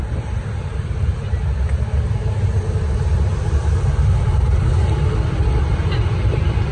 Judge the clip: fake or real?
real